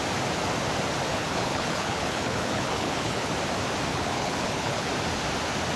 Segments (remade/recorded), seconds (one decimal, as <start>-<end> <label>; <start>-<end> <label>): 0.0-1.1 recorded; 1.1-3.3 remade; 3.3-3.9 recorded; 3.9-4.9 remade; 4.9-5.8 recorded